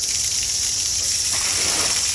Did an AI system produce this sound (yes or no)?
no